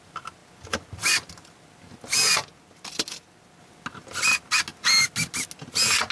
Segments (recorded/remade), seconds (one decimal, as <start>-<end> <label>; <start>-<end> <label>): 0.0-6.1 recorded